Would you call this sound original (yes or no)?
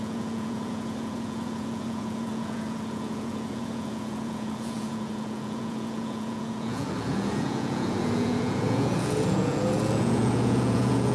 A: no